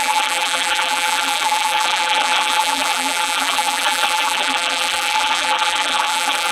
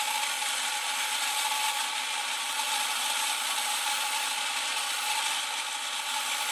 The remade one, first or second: first